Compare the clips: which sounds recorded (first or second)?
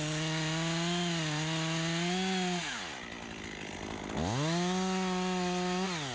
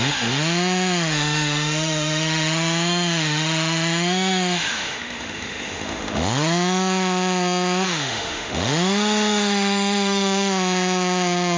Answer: first